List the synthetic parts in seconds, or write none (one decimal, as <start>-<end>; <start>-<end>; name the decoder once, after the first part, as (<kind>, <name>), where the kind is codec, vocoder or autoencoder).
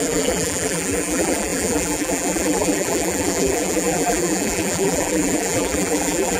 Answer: 0.0-6.4 (vocoder, BigVGAN v2)